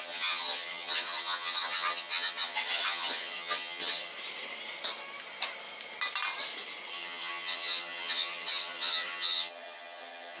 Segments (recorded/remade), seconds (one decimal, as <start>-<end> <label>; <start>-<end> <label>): 0.0-4.1 remade; 4.1-6.9 recorded; 6.9-10.4 remade